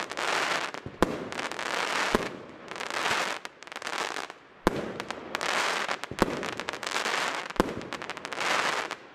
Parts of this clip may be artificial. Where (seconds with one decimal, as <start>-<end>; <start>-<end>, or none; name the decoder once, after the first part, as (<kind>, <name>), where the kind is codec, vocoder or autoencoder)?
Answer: none